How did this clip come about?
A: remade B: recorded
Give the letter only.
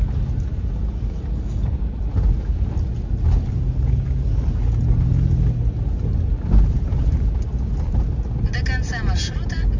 B